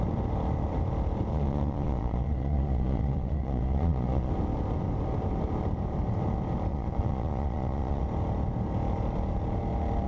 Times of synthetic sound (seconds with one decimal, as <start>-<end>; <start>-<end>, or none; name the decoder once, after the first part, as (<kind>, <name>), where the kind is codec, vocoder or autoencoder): 1.3-4.3 (vocoder, Vocos); 6.7-8.0